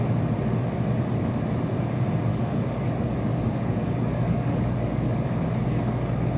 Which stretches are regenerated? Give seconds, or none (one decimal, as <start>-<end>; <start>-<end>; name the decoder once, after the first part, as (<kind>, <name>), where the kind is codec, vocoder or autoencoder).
2.3-6.4 (codec, DAC)